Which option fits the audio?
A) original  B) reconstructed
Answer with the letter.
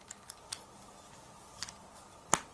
A